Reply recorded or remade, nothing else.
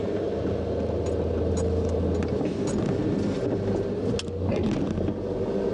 recorded